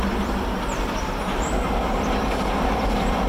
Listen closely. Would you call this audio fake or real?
fake